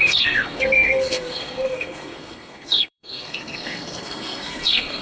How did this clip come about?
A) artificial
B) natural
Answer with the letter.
A